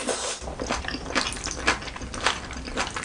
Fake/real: real